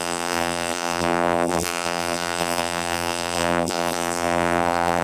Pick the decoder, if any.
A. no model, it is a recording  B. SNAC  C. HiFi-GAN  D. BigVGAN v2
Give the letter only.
D